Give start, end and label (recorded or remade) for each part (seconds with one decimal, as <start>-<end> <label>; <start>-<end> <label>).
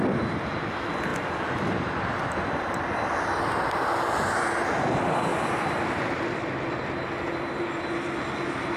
0.0-1.1 recorded; 1.1-2.8 remade; 2.8-5.3 recorded; 5.3-7.8 remade; 7.8-8.8 recorded